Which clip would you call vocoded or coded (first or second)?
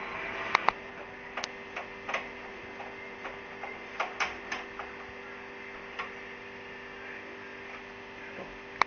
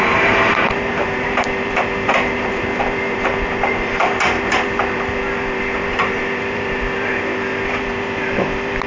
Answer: second